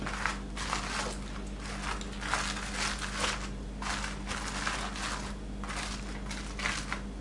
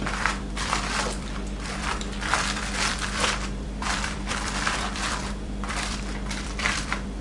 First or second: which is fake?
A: second